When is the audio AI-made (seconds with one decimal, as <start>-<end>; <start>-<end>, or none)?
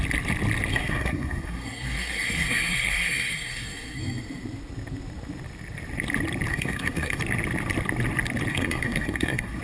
0.7-4.0; 6.5-7.2; 8.5-9.6